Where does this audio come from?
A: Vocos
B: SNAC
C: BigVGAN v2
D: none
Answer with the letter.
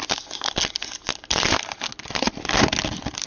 D